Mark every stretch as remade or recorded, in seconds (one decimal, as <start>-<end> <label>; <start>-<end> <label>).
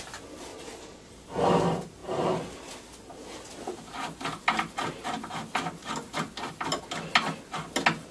0.0-0.5 recorded; 0.5-1.1 remade; 1.1-8.1 recorded